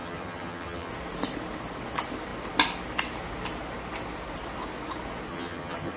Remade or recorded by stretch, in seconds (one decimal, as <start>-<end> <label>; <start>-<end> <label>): 0.0-0.9 remade; 0.9-5.3 recorded; 5.3-6.0 remade